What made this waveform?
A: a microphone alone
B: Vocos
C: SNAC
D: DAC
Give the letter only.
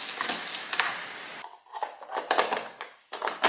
A